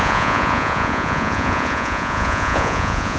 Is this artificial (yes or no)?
yes